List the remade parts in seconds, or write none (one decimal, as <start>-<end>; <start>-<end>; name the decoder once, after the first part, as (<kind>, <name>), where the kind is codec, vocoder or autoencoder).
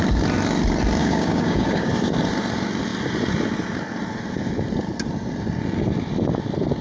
1.0-1.9 (codec, DAC)